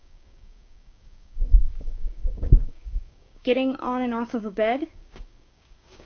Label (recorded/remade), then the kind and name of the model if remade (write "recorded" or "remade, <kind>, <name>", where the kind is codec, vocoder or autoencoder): remade, codec, DAC